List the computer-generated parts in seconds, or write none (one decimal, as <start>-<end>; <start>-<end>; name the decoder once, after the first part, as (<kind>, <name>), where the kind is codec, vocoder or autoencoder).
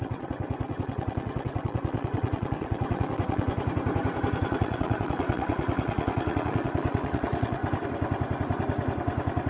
0.0-3.5 (vocoder, WaveNeXt); 4.4-7.6